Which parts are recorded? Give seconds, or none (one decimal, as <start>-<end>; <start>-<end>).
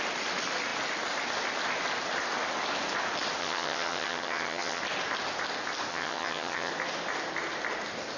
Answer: 0.0-3.4; 4.8-5.9; 6.7-8.2